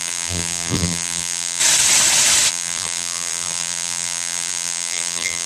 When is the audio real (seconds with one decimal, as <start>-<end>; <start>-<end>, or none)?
1.6-2.5